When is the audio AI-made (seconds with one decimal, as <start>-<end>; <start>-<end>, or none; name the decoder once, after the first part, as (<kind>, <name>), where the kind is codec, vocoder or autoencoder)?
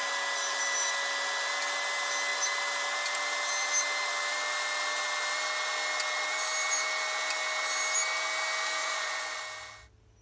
8.8-9.4 (vocoder, Vocos)